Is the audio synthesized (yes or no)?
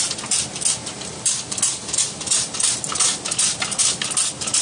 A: no